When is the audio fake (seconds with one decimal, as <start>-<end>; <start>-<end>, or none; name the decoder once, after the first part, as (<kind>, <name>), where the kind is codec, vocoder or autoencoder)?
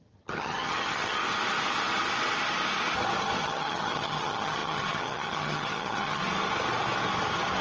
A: 0.0-1.2 (vocoder, HiFi-GAN); 3.4-6.2